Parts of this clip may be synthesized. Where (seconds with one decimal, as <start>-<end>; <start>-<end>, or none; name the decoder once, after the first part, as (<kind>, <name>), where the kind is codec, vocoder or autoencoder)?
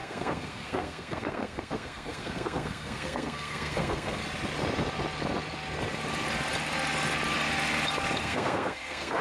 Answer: 0.0-4.2 (codec, SNAC); 8.2-9.2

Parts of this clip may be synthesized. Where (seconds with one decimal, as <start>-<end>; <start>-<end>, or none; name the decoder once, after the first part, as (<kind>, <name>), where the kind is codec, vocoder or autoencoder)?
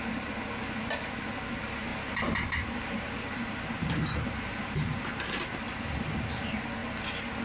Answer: 1.9-5.0 (vocoder, BigVGAN v2)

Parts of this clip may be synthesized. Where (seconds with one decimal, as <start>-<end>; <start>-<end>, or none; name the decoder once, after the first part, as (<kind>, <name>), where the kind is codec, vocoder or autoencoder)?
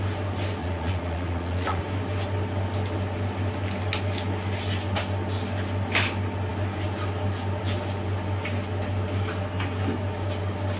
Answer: 0.6-1.8 (vocoder, Vocos)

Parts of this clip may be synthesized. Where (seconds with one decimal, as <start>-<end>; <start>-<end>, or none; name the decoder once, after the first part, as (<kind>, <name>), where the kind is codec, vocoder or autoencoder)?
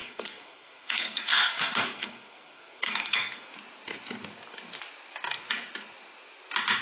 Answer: 0.0-3.5 (codec, SNAC)